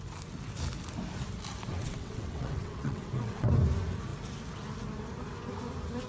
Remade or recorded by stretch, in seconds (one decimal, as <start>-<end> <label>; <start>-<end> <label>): 0.0-1.7 recorded; 1.7-3.5 remade; 3.5-6.1 recorded